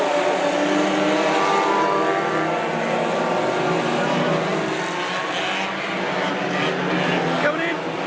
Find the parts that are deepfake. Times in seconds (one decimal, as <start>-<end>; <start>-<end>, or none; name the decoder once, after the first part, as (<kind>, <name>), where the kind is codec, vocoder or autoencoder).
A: none